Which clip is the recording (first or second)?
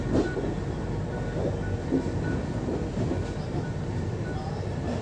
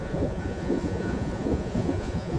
first